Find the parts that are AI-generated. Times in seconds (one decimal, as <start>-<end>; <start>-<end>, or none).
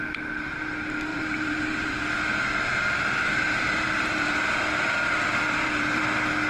1.1-2.0; 2.7-6.0